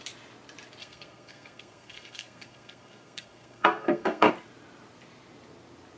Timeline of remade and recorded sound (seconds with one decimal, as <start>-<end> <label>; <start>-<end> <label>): 0.0-0.8 recorded; 0.8-4.3 remade; 4.3-6.0 recorded